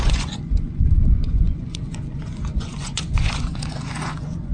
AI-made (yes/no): yes